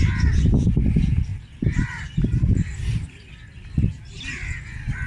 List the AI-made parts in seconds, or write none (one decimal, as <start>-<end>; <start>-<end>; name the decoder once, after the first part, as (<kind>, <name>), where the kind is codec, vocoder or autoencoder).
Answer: 1.3-1.9 (vocoder, BigVGAN v2)